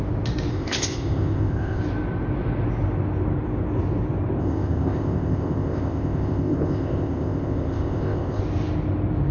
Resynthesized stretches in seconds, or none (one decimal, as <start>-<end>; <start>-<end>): 0.5-1.8; 4.4-8.4